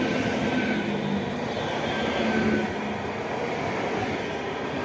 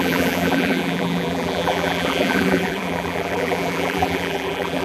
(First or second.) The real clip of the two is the first